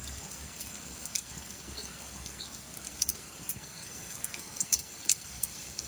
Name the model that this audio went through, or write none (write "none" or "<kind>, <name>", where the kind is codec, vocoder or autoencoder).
codec, SNAC